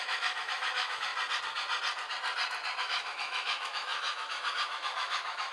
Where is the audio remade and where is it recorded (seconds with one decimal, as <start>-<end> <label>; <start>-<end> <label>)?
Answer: 0.0-1.1 remade; 1.1-2.8 recorded; 2.8-5.5 remade